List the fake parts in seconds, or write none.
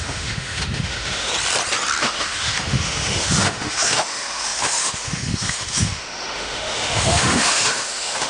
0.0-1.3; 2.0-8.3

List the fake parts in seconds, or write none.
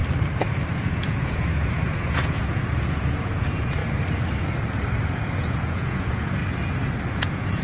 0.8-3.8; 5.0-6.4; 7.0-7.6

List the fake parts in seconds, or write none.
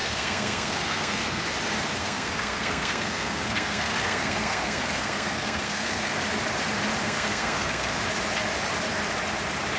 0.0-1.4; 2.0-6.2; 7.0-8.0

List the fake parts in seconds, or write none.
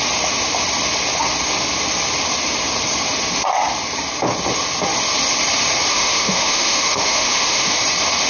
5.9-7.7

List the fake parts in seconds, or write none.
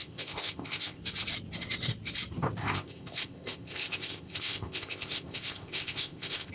0.0-1.0; 2.6-6.5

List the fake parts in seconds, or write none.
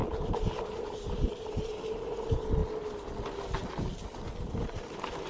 0.0-2.6; 4.5-5.3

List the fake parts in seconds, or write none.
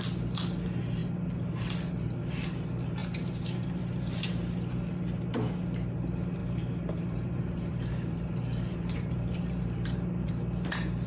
3.0-4.7; 6.4-10.3